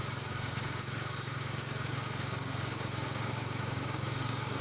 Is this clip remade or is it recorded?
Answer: remade